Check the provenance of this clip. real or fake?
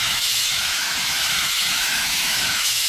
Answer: fake